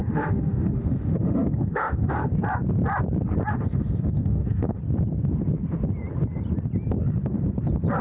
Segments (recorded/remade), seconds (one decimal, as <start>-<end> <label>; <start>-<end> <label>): 0.0-2.3 remade; 2.3-3.5 recorded; 3.5-4.8 remade; 4.8-8.0 recorded